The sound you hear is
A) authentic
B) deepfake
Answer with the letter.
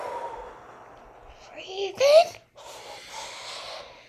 A